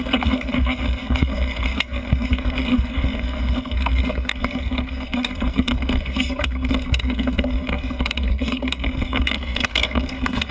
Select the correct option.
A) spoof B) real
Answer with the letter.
A